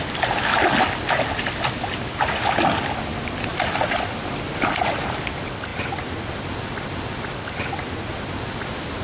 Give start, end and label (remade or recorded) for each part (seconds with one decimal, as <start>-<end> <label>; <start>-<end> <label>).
0.0-9.0 recorded